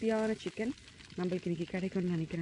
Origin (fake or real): real